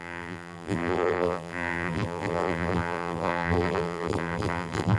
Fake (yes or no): yes